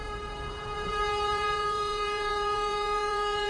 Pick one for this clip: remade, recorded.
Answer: remade